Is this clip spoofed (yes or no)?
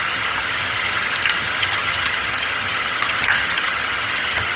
yes